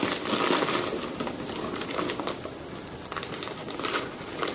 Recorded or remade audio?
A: recorded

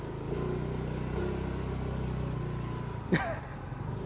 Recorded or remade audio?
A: recorded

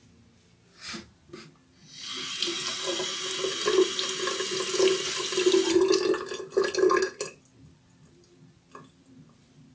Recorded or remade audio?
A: recorded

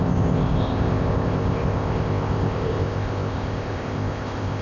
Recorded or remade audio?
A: remade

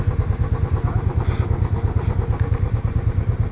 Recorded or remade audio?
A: recorded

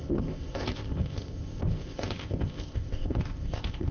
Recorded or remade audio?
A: remade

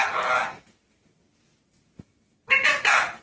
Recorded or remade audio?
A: recorded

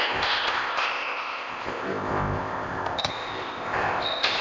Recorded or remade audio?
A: remade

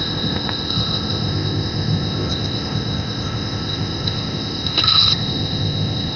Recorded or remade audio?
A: remade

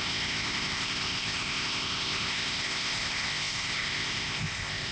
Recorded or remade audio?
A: remade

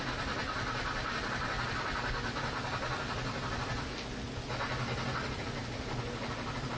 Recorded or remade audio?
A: recorded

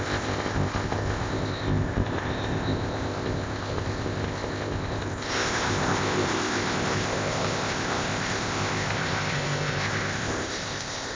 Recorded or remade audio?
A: remade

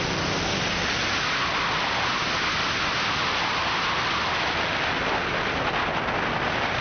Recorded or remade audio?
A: recorded